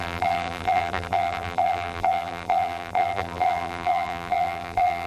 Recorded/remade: remade